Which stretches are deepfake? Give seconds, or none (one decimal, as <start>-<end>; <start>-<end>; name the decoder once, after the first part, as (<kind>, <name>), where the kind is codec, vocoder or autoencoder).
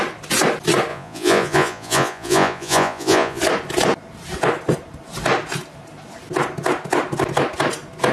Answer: 0.9-3.4 (vocoder, Vocos)